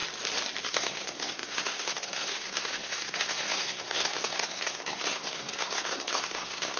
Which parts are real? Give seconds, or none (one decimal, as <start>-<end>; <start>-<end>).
0.0-0.6